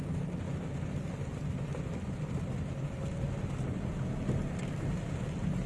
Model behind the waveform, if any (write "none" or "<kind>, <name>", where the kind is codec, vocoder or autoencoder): none